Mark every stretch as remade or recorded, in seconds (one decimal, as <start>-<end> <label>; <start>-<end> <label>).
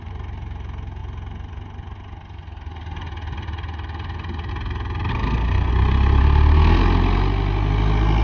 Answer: 0.0-5.1 recorded; 5.1-5.7 remade; 5.7-6.2 recorded; 6.2-6.8 remade; 6.8-8.2 recorded